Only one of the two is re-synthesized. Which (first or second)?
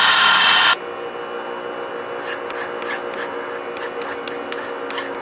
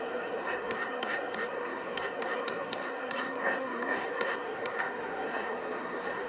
second